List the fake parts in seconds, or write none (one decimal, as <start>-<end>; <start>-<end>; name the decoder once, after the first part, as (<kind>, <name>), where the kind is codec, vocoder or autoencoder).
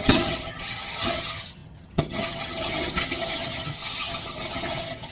0.0-5.1 (vocoder, HiFi-GAN)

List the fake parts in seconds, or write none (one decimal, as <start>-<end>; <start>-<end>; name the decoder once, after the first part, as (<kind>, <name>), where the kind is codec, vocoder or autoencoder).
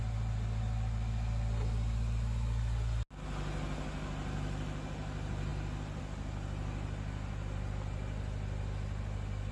none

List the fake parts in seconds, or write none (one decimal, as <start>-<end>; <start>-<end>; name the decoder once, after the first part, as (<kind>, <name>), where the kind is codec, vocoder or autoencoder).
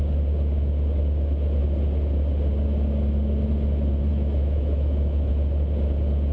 4.1-5.3 (autoencoder, DAC-VAE)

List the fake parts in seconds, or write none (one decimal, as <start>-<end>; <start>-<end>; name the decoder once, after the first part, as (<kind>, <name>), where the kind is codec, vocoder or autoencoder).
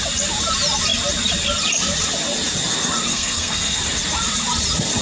3.1-3.8 (codec, SNAC)